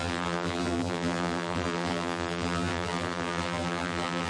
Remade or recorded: remade